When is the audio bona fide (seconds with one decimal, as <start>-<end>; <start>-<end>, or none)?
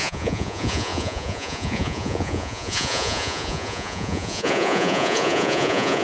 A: none